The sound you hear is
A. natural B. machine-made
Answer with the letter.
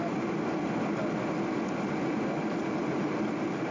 A